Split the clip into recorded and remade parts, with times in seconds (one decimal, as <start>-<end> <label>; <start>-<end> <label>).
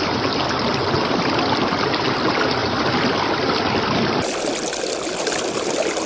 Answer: 0.0-6.1 recorded